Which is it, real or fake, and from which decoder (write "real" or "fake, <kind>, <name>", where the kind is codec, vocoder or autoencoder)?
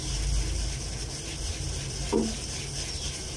real